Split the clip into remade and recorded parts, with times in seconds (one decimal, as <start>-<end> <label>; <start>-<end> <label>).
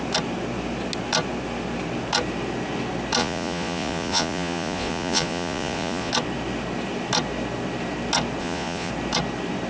0.0-3.2 recorded; 3.2-6.1 remade; 6.1-8.4 recorded; 8.4-8.9 remade; 8.9-9.7 recorded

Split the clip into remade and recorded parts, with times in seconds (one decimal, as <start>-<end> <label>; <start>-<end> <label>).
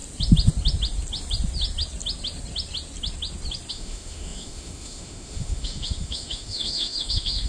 0.0-3.7 recorded; 3.7-7.5 remade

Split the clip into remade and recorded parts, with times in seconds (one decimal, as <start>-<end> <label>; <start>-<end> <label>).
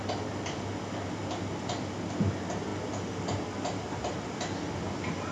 0.0-5.3 recorded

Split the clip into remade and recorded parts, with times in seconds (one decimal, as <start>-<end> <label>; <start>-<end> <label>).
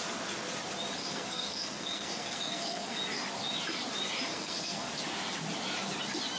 0.0-1.0 recorded; 1.0-3.0 remade; 3.0-4.3 recorded; 4.3-4.9 remade; 4.9-6.4 recorded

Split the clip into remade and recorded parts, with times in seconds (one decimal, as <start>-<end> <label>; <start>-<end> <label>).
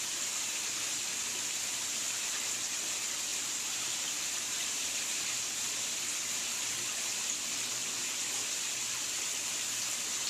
0.0-3.3 recorded; 3.3-5.8 remade; 5.8-10.3 recorded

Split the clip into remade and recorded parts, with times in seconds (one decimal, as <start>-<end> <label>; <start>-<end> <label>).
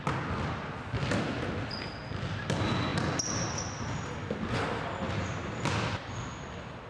0.0-6.9 recorded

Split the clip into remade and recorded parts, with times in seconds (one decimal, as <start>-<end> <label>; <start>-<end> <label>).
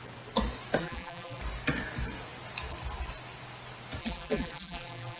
0.0-0.8 recorded; 0.8-1.4 remade; 1.4-4.0 recorded; 4.0-5.2 remade